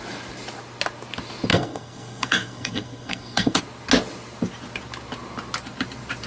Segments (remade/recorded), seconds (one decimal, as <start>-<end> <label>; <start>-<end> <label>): 0.0-1.5 recorded; 1.5-3.6 remade; 3.6-6.3 recorded